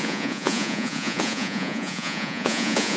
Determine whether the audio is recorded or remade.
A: remade